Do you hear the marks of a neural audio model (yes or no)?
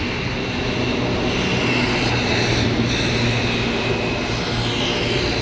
no